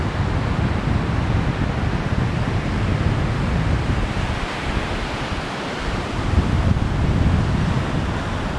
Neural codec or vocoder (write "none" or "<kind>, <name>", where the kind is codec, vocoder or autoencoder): none